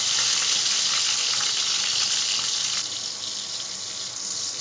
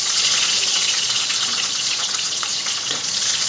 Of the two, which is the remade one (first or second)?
second